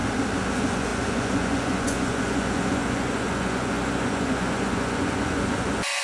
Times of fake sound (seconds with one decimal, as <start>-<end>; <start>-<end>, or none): 0.5-6.0